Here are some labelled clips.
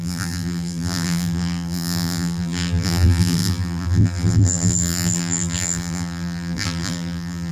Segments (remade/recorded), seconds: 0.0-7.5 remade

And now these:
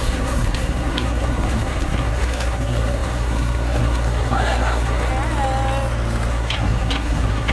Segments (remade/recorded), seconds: 0.0-5.1 remade; 5.1-6.3 recorded; 6.3-7.5 remade

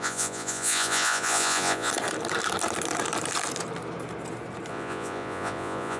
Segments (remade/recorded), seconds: 0.0-1.9 remade; 1.9-4.7 recorded; 4.7-6.0 remade

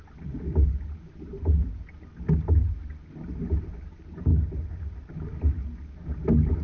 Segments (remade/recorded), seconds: 0.0-4.3 recorded; 4.3-4.8 remade; 4.8-6.6 recorded

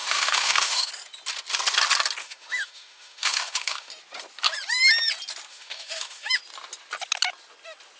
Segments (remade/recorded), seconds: 0.0-0.9 remade; 0.9-2.2 recorded; 2.2-3.9 remade; 3.9-5.5 recorded; 5.5-6.4 remade; 6.4-8.0 recorded

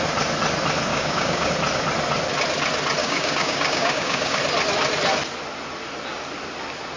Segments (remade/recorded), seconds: 0.0-0.9 recorded; 0.9-1.5 remade; 1.5-3.0 recorded; 3.0-4.4 remade; 4.4-7.0 recorded

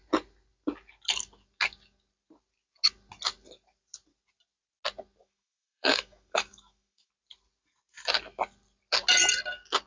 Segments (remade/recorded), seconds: 0.0-5.2 recorded; 5.2-7.1 remade; 7.1-9.9 recorded

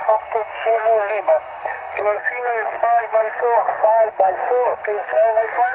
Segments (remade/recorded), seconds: 0.0-5.7 remade